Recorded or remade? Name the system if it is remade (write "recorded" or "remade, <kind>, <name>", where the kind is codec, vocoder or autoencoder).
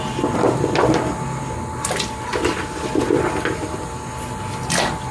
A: recorded